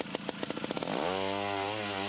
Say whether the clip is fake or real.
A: real